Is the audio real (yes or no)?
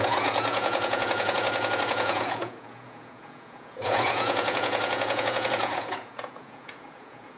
no